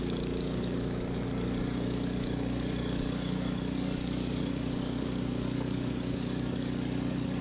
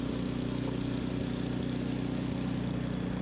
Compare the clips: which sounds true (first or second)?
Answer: second